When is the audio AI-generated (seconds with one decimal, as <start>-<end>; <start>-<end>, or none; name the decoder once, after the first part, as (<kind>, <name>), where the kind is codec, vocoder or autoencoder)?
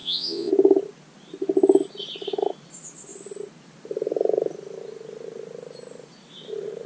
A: 0.0-0.5 (vocoder, Vocos)